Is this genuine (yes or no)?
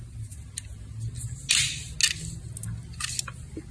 yes